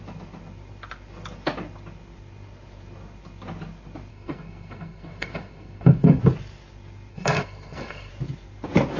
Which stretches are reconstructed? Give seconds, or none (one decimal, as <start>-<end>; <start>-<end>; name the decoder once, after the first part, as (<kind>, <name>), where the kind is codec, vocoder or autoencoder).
4.1-6.2 (codec, SNAC); 7.1-8.1